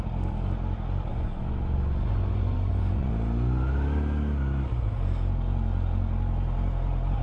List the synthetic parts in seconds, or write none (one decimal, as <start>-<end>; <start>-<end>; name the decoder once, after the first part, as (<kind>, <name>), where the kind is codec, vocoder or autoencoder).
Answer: 1.1-3.1 (vocoder, Vocos)